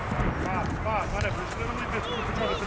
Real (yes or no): yes